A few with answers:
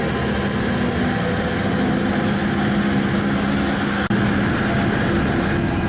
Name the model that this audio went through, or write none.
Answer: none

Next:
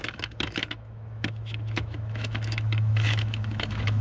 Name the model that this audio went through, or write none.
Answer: autoencoder, DAC-VAE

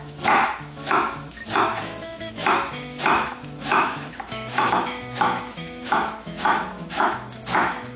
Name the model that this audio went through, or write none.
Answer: autoencoder, DAC-VAE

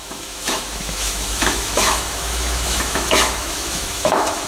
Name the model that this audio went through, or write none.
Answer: autoencoder, DAC-VAE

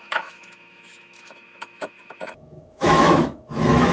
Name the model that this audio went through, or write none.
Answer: autoencoder, DAC-VAE